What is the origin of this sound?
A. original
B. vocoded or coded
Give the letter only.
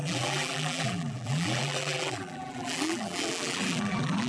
B